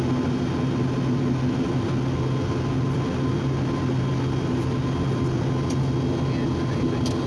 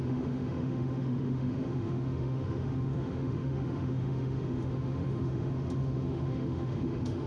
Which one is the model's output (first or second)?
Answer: second